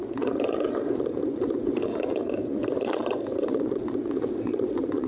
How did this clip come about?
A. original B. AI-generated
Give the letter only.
B